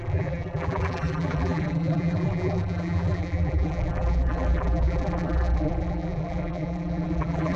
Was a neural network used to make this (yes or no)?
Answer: yes